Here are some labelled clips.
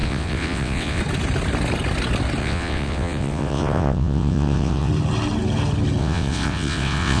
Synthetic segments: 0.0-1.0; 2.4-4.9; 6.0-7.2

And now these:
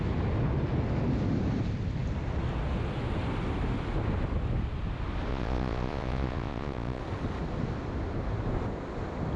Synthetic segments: 5.3-7.0

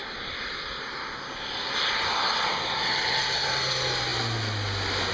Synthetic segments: none

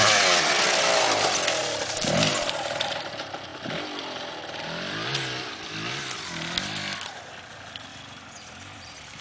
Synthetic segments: 1.6-2.3; 7.9-9.2

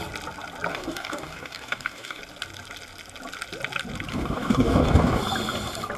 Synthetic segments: 0.7-2.2; 4.1-5.2

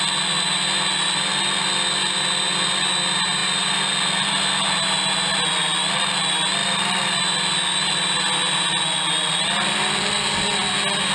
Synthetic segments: none

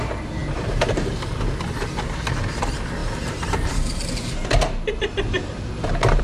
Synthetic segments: 0.4-1.1; 3.0-6.2